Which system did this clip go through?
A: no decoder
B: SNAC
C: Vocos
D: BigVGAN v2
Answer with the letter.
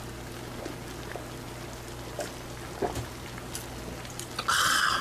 A